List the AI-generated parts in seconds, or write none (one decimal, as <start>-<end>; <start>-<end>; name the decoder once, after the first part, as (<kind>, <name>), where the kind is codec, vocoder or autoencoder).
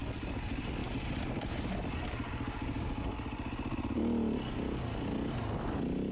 none